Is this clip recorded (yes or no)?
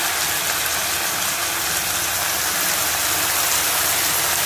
yes